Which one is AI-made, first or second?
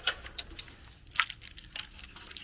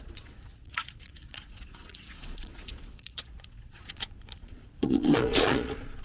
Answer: second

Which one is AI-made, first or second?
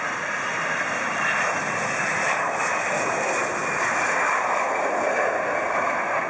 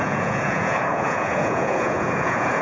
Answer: second